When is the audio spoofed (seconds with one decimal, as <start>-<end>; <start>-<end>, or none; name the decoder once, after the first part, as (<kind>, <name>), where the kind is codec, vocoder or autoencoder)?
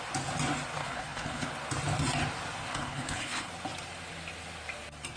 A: 0.8-1.5 (codec, HILCodec); 2.7-3.5